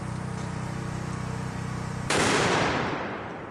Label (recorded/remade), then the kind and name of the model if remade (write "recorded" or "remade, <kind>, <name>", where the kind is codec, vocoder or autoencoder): remade, vocoder, BigVGAN v2